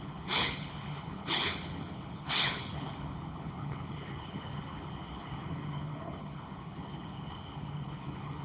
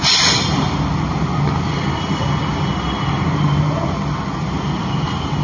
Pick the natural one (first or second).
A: second